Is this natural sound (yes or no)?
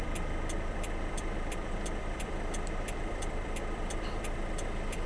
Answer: no